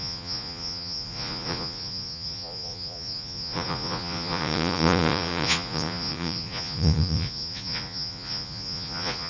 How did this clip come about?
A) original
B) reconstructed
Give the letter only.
B